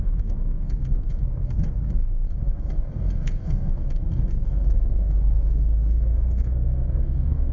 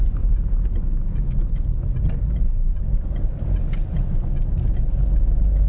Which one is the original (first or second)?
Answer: second